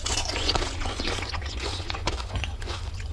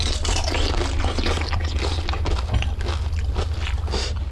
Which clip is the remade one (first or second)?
first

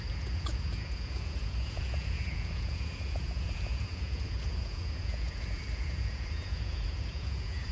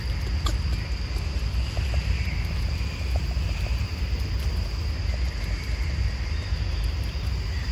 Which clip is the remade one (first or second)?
first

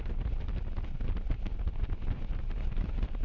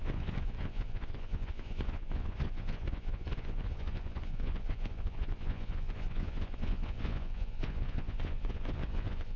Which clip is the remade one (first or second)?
second